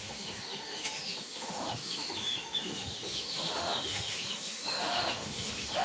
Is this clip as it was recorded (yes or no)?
no